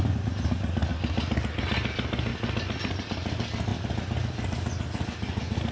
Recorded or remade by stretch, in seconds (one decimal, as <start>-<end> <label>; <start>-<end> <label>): 0.0-5.7 recorded